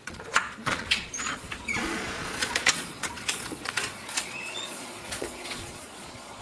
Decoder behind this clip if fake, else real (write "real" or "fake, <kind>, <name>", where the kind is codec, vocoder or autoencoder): fake, vocoder, Vocos